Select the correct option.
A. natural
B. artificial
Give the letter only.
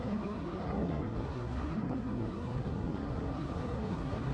B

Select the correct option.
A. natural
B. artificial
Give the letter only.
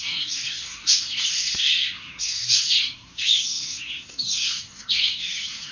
B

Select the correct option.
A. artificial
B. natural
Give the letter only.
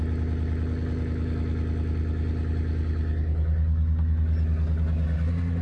B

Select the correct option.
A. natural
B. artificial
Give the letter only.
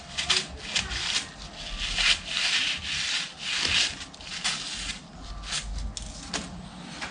A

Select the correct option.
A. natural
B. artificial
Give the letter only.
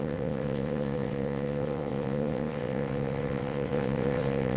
B